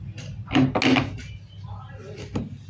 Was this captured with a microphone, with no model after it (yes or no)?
yes